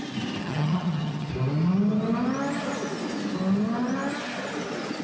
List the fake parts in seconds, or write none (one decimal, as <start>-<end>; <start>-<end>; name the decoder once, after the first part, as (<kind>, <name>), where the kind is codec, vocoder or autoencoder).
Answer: 0.4-1.3 (vocoder, HiFi-GAN)